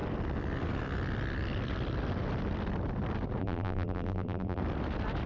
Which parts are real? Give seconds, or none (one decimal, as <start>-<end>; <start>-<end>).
0.0-3.4; 4.6-5.3